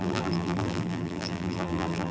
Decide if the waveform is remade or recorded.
remade